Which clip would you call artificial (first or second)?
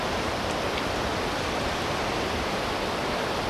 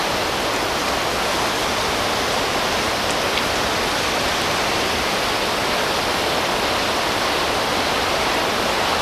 first